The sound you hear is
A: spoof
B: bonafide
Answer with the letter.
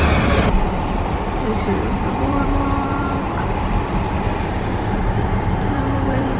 A